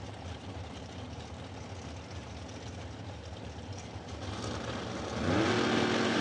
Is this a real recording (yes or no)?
yes